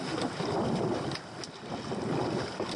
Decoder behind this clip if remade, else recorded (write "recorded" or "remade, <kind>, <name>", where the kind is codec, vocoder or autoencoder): recorded